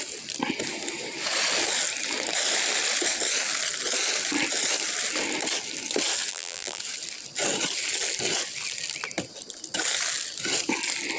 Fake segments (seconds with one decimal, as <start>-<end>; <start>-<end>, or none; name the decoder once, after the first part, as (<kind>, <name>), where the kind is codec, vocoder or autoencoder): 6.3-6.8 (vocoder, BigVGAN v2)